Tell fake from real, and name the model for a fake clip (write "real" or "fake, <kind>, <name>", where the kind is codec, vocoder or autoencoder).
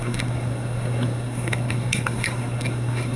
fake, codec, SNAC